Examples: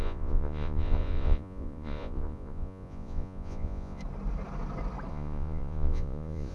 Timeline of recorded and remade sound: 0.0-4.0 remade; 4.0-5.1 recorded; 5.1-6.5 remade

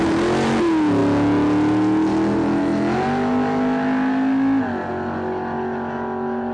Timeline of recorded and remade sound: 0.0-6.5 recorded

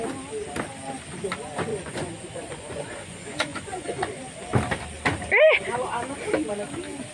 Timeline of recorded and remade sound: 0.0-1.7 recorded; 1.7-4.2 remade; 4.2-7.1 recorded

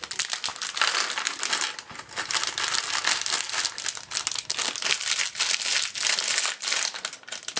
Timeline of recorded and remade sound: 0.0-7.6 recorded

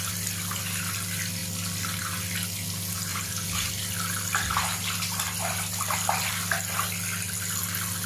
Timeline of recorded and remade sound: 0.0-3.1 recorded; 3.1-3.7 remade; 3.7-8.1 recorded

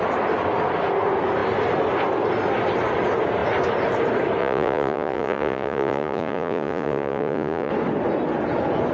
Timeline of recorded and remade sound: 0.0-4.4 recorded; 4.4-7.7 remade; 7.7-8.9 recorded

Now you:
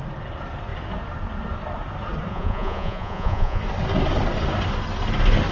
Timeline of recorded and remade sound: 0.0-2.3 recorded; 2.3-3.6 remade; 3.6-5.5 recorded

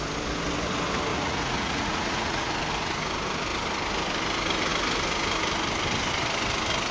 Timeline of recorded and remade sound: 0.0-1.1 recorded; 1.1-2.5 remade; 2.5-6.9 recorded